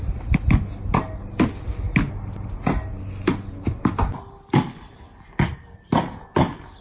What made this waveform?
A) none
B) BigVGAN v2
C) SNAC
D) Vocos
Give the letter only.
A